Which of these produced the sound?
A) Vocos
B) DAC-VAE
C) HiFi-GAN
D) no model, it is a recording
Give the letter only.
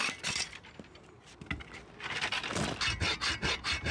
D